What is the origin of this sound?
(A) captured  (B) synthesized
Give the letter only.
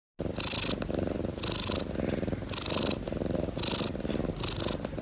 A